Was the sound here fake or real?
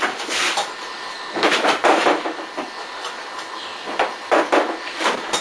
real